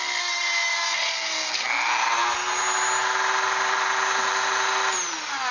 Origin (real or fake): real